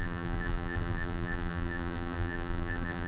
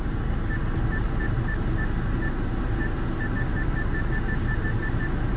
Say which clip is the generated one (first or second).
first